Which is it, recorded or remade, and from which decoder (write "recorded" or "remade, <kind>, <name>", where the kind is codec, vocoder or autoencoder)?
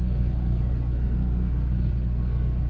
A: remade, codec, SNAC